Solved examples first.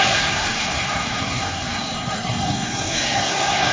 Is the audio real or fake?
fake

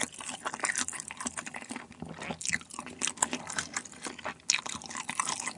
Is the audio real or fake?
real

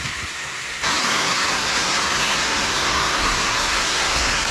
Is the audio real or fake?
fake